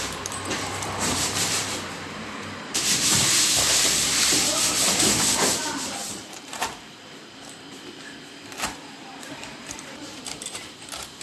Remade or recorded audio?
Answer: remade